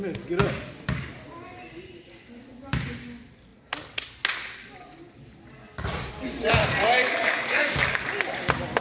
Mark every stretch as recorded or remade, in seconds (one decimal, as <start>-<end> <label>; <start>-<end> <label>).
0.0-0.4 recorded; 0.4-1.1 remade; 1.1-6.6 recorded; 6.6-8.0 remade; 8.0-8.8 recorded